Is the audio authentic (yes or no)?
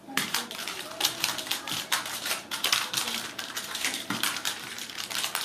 no